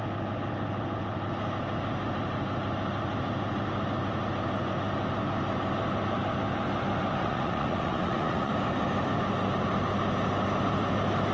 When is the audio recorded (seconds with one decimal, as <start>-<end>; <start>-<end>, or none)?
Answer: 0.0-7.2; 8.5-11.3